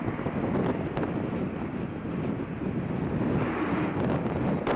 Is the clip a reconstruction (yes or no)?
no